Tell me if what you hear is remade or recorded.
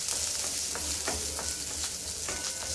recorded